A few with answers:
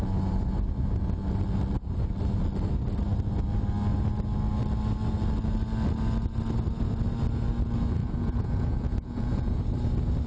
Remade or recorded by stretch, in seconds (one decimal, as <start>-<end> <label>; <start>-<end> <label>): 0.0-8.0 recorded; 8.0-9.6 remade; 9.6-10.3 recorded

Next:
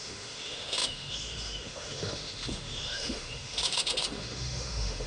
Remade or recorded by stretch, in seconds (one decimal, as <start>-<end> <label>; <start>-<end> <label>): 0.0-5.1 remade

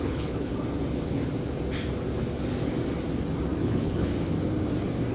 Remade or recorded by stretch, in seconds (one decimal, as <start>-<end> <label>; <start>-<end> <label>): 0.0-0.5 remade; 0.5-3.6 recorded; 3.6-4.1 remade; 4.1-5.1 recorded